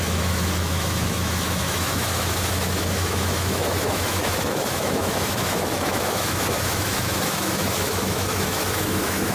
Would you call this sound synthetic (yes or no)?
yes